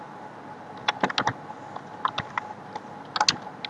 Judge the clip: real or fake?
real